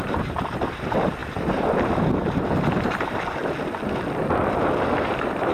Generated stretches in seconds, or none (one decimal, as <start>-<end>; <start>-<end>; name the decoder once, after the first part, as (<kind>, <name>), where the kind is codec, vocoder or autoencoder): 0.0-3.4 (vocoder, BigVGAN v2); 5.0-5.5